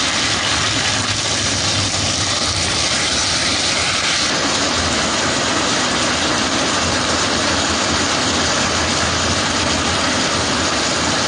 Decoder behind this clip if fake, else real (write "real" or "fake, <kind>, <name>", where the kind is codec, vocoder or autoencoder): real